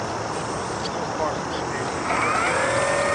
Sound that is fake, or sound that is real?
real